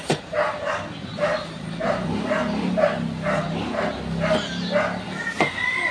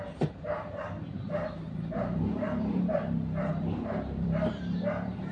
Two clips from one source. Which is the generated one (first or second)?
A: second